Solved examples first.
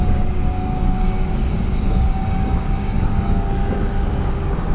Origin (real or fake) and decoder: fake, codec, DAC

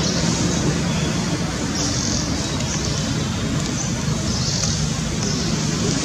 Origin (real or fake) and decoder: real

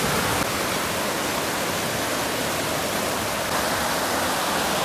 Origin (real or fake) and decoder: real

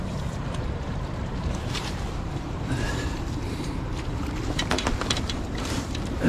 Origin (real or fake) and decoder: fake, vocoder, BigVGAN v2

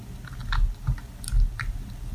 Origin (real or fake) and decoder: real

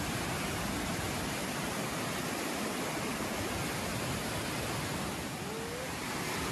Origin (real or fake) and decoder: real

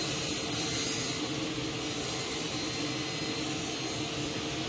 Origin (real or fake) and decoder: real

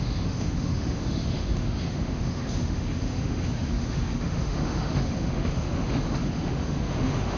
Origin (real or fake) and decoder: fake, autoencoder, DAC-VAE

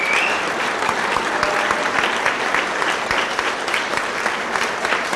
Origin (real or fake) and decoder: real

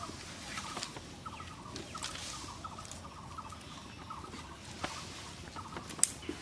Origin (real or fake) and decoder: real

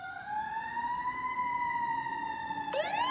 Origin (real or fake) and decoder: fake, vocoder, BigVGAN v2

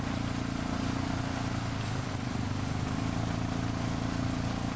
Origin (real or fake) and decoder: real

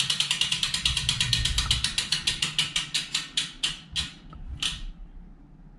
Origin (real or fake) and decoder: real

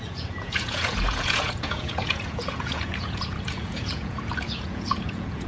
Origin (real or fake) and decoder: fake, vocoder, Vocos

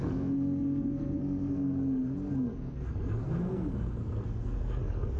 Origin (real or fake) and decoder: fake, codec, SNAC